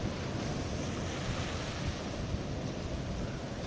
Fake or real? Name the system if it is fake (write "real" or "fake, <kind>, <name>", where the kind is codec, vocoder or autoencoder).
real